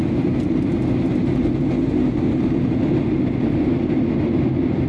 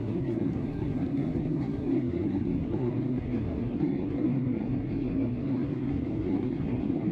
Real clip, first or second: first